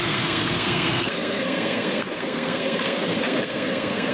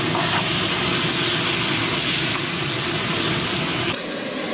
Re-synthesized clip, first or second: first